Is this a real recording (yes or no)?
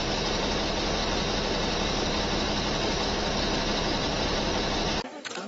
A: yes